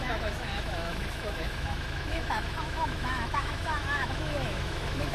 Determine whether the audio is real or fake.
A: fake